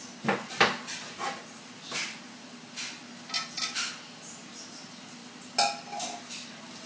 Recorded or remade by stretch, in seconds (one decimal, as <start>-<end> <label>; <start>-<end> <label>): 0.0-6.9 recorded